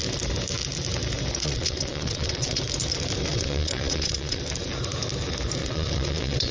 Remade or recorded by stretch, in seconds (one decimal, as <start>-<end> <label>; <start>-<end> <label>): 0.0-1.4 recorded; 1.4-2.6 remade; 2.6-3.3 recorded; 3.3-4.4 remade; 4.4-5.6 recorded; 5.6-6.5 remade